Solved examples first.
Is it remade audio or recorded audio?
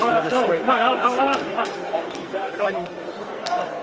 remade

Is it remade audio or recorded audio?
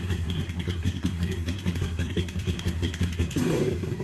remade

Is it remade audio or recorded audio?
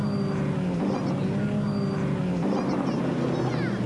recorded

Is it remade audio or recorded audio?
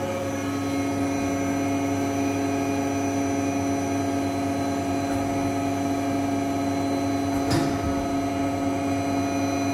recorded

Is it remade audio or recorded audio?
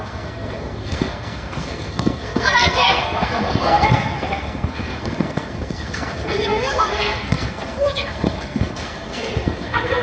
remade